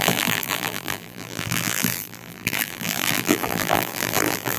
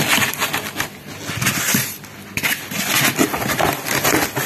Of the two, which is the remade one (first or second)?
first